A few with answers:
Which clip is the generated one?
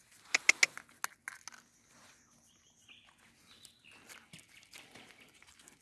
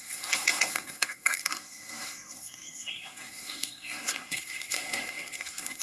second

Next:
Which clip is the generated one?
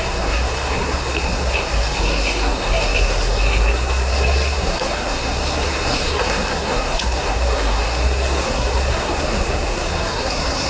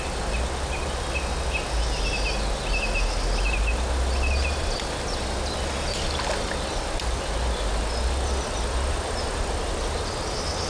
first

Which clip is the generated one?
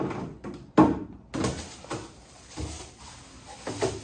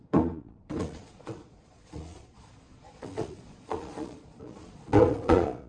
second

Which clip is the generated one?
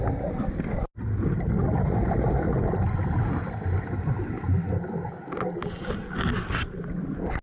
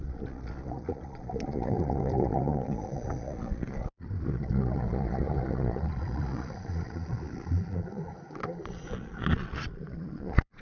second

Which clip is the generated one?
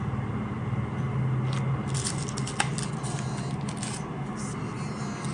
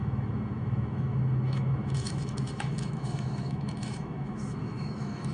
second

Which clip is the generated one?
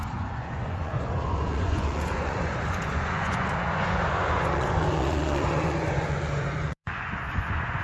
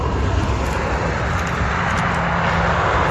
first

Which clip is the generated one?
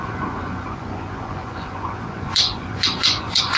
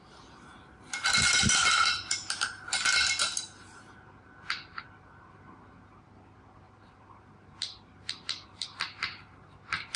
first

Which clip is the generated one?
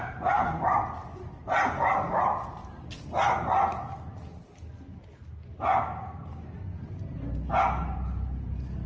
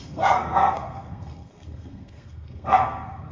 second